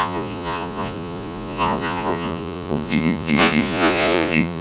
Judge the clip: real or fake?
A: fake